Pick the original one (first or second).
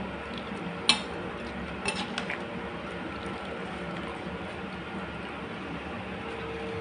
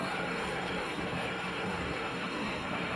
first